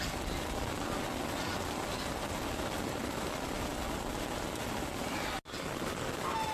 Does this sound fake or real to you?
real